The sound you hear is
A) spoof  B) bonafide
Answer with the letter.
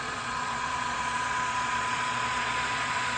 A